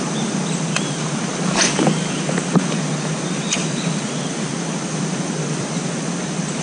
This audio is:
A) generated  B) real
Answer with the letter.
A